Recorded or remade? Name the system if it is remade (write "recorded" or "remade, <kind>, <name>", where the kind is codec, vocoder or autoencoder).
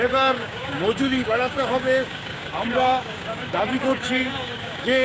remade, codec, DAC